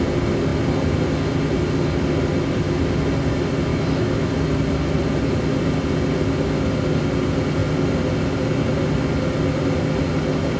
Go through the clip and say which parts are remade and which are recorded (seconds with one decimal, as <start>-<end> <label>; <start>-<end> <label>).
0.0-3.7 recorded; 3.7-4.3 remade; 4.3-10.6 recorded